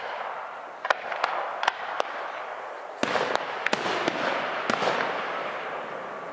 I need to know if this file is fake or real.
real